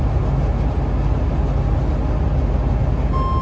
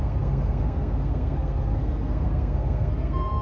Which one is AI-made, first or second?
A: second